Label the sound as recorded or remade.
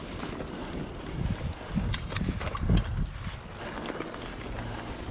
recorded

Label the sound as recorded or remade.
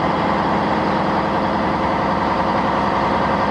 recorded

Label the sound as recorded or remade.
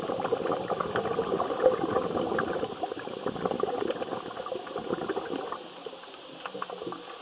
recorded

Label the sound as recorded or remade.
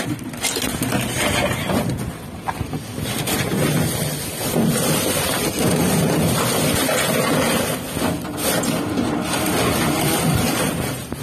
recorded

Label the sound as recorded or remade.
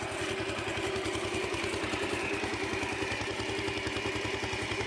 recorded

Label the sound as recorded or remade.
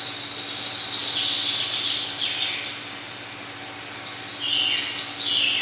recorded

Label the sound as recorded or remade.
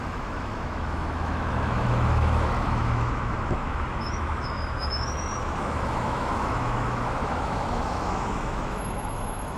remade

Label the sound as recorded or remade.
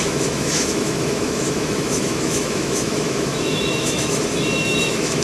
remade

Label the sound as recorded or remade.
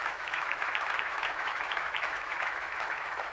remade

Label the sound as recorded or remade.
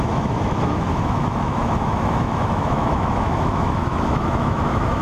remade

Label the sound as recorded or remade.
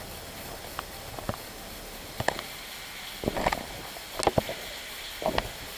recorded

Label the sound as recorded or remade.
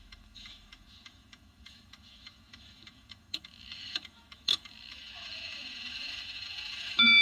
remade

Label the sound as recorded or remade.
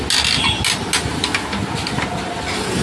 recorded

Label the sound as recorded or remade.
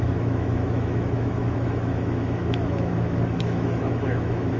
remade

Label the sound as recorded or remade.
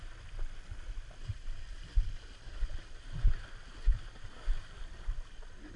recorded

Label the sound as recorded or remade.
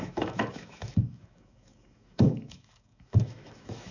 remade